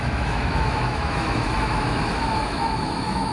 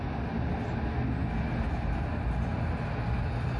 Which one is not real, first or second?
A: first